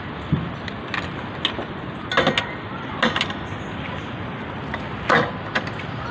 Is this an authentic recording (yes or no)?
yes